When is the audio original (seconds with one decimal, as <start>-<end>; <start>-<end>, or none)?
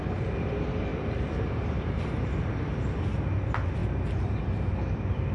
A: 0.0-0.9; 2.5-3.8; 4.7-5.3